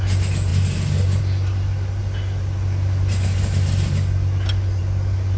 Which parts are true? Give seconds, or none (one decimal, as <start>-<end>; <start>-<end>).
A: 0.0-5.4